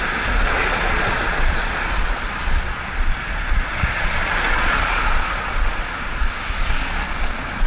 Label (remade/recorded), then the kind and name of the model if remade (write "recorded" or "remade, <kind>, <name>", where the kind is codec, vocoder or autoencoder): remade, vocoder, Vocos